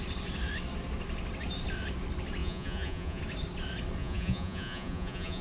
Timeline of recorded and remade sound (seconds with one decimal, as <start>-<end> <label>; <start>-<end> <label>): 0.0-2.4 recorded; 2.4-3.2 remade; 3.2-4.0 recorded; 4.0-5.4 remade